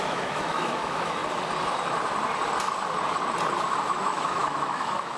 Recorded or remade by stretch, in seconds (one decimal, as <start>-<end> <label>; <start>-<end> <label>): 0.0-1.2 remade; 1.2-4.0 recorded; 4.0-5.2 remade

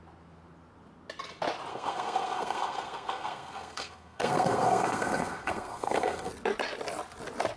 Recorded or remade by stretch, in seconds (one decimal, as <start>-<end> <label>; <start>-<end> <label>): 0.0-1.7 recorded; 1.7-6.3 remade; 6.3-7.6 recorded